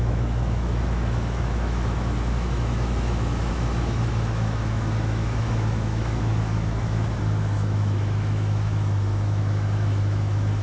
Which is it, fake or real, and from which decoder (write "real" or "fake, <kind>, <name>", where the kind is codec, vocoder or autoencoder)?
fake, autoencoder, DAC-VAE